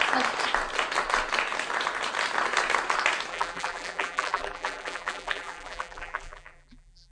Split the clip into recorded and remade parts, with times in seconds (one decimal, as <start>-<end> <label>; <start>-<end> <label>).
0.0-3.3 recorded; 3.3-7.1 remade